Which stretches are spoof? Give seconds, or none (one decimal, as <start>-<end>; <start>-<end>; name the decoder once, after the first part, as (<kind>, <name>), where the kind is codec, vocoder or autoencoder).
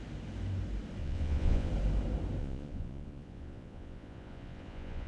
1.0-1.7 (vocoder, Vocos); 2.4-5.1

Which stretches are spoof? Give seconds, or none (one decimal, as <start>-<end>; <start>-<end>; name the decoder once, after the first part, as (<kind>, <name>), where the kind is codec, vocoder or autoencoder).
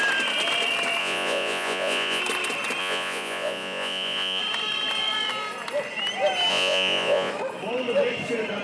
1.0-2.2 (vocoder, Vocos); 2.8-4.4; 6.5-7.3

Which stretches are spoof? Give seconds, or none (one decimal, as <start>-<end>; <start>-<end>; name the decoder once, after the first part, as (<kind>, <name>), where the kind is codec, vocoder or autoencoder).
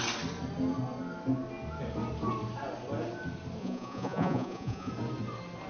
3.6-4.9 (vocoder, Vocos)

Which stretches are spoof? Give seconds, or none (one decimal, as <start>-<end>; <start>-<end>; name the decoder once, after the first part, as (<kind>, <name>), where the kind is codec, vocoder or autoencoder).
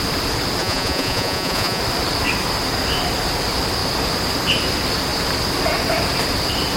0.6-1.8 (vocoder, Vocos)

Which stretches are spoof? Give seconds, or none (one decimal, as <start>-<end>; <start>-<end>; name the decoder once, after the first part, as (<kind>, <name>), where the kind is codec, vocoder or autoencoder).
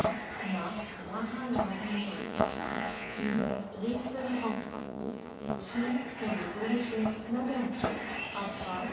2.2-3.6 (vocoder, Vocos); 4.5-5.6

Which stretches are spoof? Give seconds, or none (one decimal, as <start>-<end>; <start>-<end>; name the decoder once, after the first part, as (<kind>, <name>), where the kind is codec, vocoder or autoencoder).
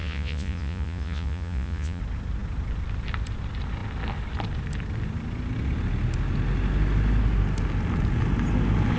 0.0-2.0 (vocoder, Vocos)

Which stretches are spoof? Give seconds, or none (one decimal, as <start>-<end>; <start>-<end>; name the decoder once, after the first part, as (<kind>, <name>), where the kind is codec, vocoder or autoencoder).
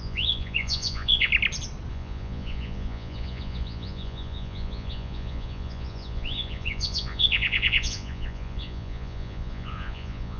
0.0-1.3 (vocoder, Vocos); 1.9-10.4